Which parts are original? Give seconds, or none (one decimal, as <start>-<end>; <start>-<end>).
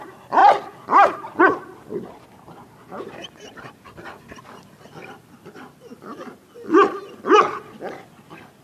0.0-8.6